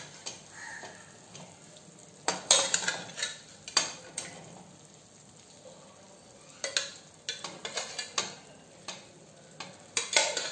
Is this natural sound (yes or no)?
yes